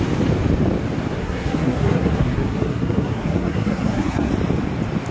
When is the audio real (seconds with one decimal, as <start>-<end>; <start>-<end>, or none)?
0.0-1.2; 4.3-5.1